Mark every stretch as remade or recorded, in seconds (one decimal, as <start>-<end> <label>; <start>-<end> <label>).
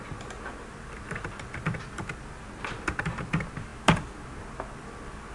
0.0-5.3 recorded